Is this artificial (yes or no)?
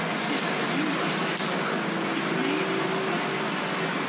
no